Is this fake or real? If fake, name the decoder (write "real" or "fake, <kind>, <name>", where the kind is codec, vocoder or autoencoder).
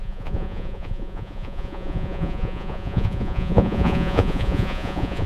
fake, vocoder, Vocos